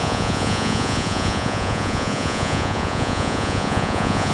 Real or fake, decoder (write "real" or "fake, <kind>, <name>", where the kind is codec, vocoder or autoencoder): fake, vocoder, Vocos